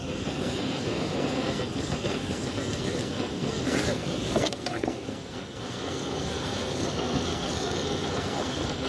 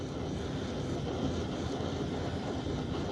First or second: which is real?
second